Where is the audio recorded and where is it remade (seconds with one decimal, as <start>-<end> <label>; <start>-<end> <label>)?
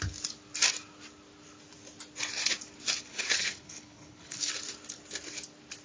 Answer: 0.0-3.1 recorded; 3.1-4.5 remade; 4.5-5.8 recorded